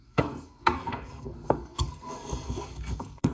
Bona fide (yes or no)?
no